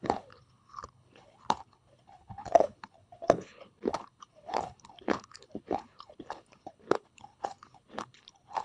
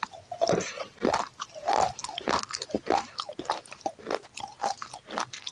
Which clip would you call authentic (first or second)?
second